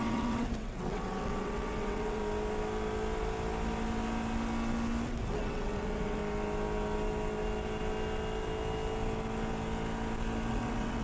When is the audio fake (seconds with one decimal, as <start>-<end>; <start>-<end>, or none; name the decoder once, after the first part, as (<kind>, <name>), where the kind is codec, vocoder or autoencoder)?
0.0-2.2 (vocoder, WaveNeXt); 5.3-6.2; 10.5-11.0